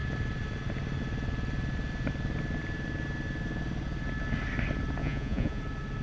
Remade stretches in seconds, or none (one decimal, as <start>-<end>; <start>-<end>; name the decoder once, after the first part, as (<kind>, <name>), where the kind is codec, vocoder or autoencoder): 5.0-5.6 (vocoder, Vocos)

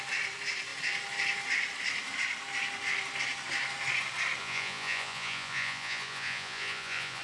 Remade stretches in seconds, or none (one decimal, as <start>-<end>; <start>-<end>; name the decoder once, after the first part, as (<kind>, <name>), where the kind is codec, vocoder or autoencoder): 4.4-7.2 (vocoder, Vocos)

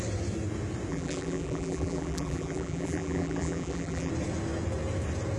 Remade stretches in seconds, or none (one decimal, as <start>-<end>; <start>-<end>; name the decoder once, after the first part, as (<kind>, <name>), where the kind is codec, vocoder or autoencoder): 0.9-4.1 (vocoder, BigVGAN v2)

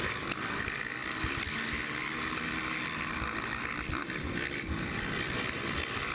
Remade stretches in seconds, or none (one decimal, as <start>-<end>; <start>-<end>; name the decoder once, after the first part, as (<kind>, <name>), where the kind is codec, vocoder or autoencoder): none

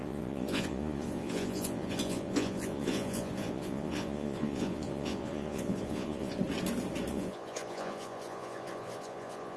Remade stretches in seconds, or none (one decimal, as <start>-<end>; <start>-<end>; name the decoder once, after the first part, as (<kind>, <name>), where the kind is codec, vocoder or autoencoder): 0.0-6.4 (vocoder, Vocos); 7.1-9.6